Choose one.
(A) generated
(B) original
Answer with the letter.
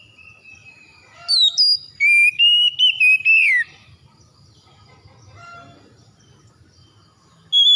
B